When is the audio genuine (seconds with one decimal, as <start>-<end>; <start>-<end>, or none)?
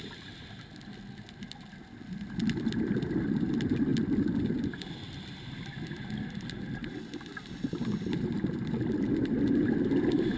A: 0.0-10.4